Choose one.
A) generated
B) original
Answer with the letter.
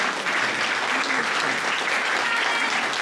B